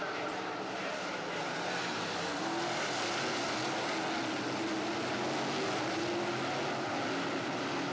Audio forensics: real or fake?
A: real